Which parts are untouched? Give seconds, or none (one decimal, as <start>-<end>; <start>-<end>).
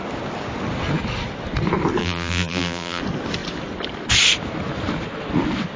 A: 0.0-2.0; 3.0-5.8